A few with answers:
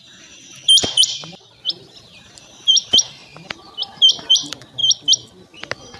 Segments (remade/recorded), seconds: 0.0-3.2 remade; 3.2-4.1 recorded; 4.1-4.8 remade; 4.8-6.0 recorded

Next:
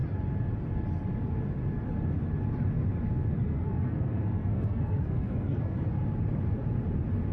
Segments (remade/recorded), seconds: 0.0-3.4 recorded; 3.4-6.0 remade; 6.0-7.3 recorded

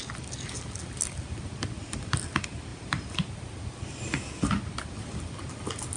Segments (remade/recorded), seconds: 0.0-6.0 recorded

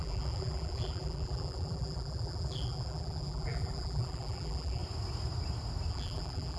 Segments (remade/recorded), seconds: 0.0-4.8 remade; 4.8-5.9 recorded; 5.9-6.6 remade

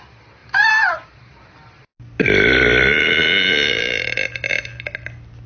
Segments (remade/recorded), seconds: 0.0-0.4 recorded; 0.4-1.5 remade; 1.5-5.5 recorded

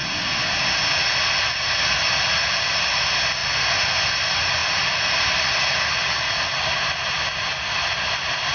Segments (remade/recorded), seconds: 0.0-8.5 recorded